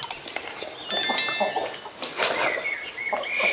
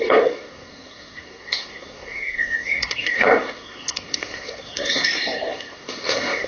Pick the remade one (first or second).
second